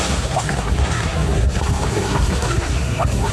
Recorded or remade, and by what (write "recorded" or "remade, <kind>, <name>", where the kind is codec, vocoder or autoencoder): remade, codec, SNAC